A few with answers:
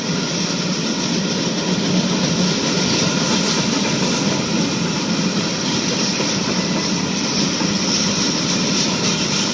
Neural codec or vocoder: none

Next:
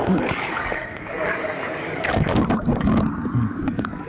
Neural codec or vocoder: codec, DAC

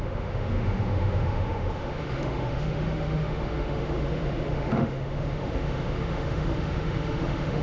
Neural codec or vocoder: autoencoder, DAC-VAE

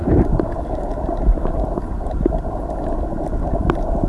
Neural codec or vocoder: none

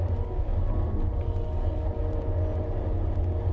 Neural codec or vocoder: none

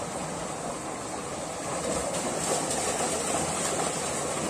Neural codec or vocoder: none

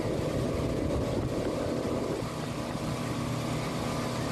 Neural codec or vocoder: none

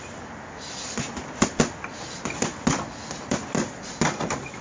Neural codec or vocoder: none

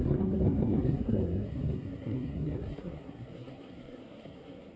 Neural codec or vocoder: codec, SNAC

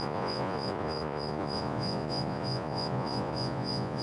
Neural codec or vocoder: vocoder, Vocos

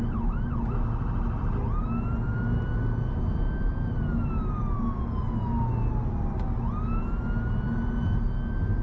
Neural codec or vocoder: none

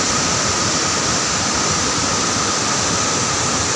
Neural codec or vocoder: none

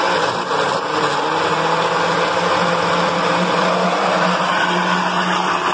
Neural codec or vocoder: none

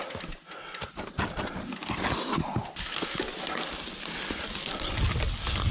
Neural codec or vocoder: none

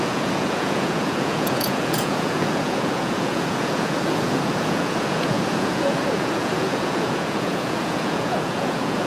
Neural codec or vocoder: vocoder, Vocos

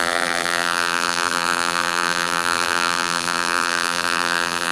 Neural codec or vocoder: vocoder, BigVGAN v2